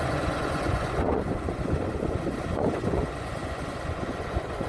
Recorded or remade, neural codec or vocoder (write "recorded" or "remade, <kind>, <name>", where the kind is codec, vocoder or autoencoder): remade, vocoder, Vocos